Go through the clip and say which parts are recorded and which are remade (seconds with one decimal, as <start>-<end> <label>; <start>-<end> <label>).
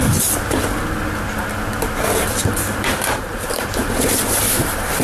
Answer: 0.0-2.4 recorded; 2.4-4.0 remade; 4.0-5.0 recorded